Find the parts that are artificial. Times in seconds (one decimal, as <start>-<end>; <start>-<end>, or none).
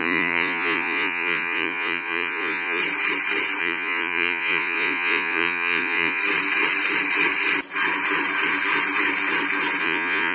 0.0-2.8; 3.6-6.2; 9.8-10.3